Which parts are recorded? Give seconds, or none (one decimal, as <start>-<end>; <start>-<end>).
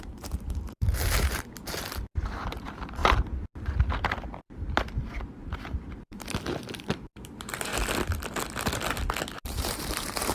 3.0-4.4; 7.7-9.4